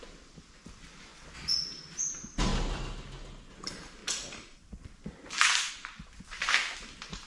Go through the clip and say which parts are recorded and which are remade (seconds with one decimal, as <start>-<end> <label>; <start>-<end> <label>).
0.0-1.1 remade; 1.1-2.1 recorded; 2.1-2.5 remade; 2.5-3.5 recorded; 3.5-4.0 remade; 4.0-5.7 recorded; 5.7-7.3 remade

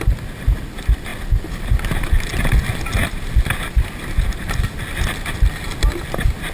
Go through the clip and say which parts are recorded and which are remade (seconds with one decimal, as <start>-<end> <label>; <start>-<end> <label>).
0.0-6.5 recorded

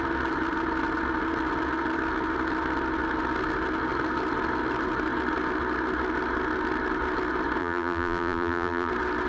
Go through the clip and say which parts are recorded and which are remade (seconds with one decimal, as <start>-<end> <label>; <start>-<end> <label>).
0.0-7.6 recorded; 7.6-8.9 remade; 8.9-9.3 recorded

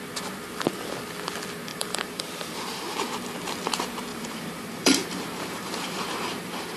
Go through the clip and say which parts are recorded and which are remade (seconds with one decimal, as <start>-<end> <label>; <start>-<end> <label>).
0.0-1.7 recorded; 1.7-2.2 remade; 2.2-4.1 recorded; 4.1-6.8 remade

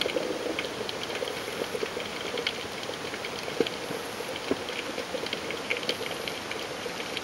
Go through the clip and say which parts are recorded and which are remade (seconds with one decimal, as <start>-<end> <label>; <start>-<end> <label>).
0.0-7.2 recorded

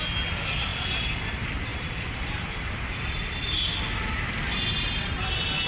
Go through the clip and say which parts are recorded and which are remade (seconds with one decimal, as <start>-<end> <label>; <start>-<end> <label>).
0.0-1.7 recorded; 1.7-5.1 remade; 5.1-5.7 recorded

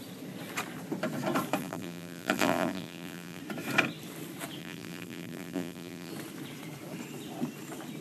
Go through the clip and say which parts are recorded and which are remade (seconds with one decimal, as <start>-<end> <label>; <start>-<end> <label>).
0.0-1.6 recorded; 1.6-3.4 remade; 3.4-4.6 recorded; 4.6-6.1 remade; 6.1-8.0 recorded